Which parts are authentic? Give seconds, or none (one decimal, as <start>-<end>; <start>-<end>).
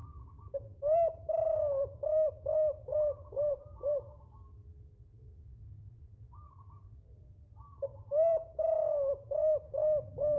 0.0-10.4